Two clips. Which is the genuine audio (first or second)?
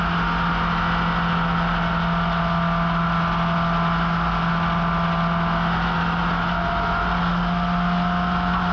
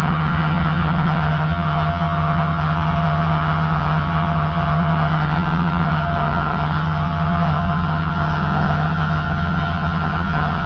first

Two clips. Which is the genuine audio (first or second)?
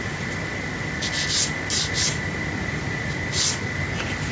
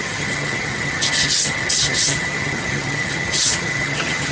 first